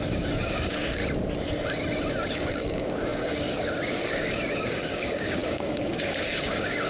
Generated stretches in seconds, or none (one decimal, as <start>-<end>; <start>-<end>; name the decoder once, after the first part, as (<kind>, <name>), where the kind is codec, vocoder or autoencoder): 0.0-1.0 (codec, DAC); 2.3-6.9